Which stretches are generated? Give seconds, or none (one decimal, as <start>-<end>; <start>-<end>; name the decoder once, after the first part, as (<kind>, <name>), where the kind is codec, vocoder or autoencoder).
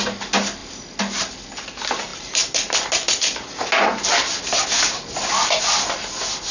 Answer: none